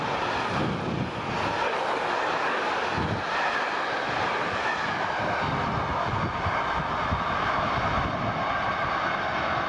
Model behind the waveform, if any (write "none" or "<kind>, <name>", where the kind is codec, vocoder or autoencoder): none